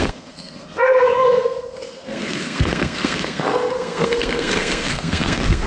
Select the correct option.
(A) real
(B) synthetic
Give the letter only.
B